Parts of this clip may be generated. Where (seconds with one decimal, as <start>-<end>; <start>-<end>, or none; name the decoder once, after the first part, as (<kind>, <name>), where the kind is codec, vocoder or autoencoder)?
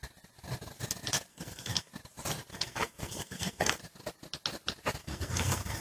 1.3-1.9 (codec, SNAC); 2.5-3.8; 5.0-5.8